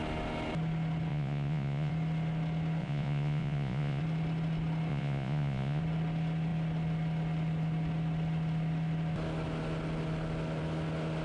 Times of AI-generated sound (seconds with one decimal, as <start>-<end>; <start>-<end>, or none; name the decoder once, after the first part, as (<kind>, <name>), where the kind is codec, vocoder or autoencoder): 1.1-1.9 (vocoder, Vocos); 2.8-4.0; 4.9-5.8